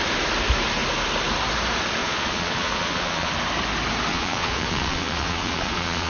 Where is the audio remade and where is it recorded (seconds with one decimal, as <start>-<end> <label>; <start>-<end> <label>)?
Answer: 0.0-2.0 recorded; 2.0-3.3 remade; 3.3-4.1 recorded; 4.1-6.1 remade